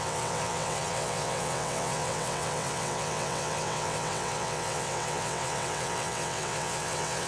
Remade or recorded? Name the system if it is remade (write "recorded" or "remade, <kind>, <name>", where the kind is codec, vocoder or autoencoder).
remade, vocoder, WaveNeXt